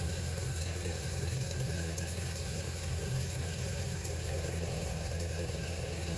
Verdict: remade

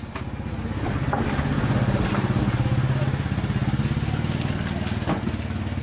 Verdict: recorded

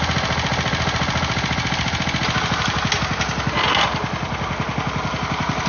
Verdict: recorded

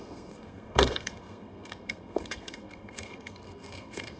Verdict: remade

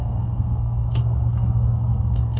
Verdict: remade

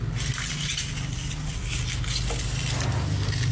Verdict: recorded